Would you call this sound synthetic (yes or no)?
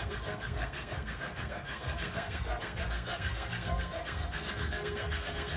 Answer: yes